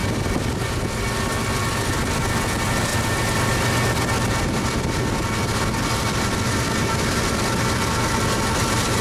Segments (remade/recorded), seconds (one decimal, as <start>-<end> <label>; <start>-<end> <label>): 0.0-9.0 recorded